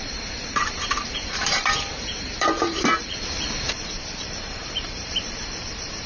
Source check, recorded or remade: remade